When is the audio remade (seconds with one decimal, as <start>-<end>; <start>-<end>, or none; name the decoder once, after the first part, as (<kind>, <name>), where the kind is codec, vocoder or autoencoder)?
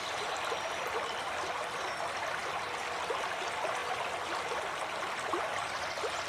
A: none